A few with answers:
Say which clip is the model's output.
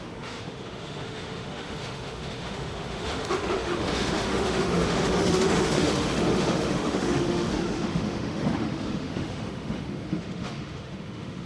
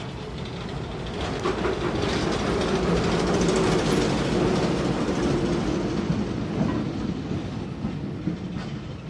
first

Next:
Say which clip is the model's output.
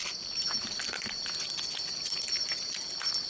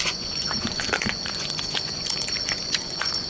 second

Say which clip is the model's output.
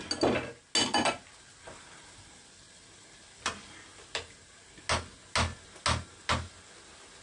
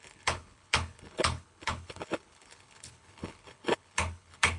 second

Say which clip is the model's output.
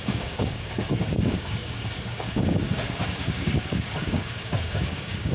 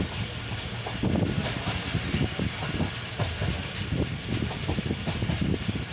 first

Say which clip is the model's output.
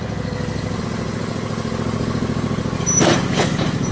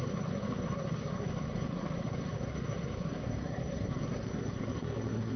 second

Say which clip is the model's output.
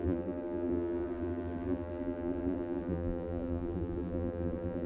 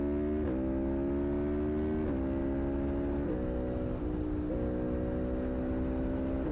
first